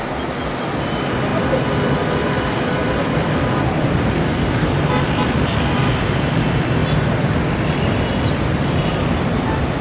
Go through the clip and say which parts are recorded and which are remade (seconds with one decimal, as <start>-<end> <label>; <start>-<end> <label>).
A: 0.0-2.8 recorded; 2.8-4.4 remade; 4.4-6.8 recorded; 6.8-9.8 remade